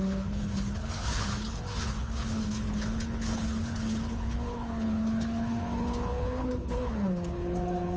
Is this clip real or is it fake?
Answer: fake